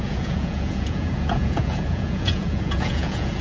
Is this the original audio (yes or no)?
no